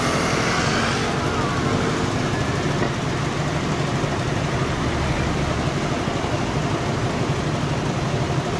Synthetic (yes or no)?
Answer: no